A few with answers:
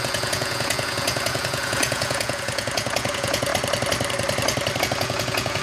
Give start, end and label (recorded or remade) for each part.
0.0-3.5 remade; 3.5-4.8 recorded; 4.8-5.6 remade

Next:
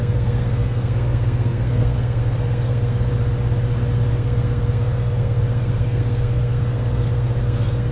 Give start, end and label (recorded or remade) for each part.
0.0-3.1 remade; 3.1-4.1 recorded; 4.1-7.9 remade

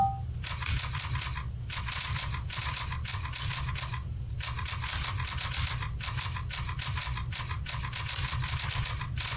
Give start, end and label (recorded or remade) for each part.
0.0-9.4 recorded

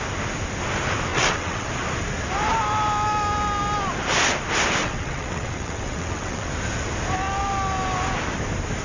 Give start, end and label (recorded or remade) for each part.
0.0-1.1 recorded; 1.1-1.7 remade; 1.7-4.8 recorded; 4.8-6.5 remade; 6.5-8.8 recorded